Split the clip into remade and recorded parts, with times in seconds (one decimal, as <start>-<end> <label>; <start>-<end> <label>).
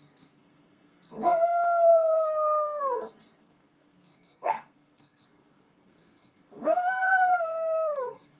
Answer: 0.0-8.4 remade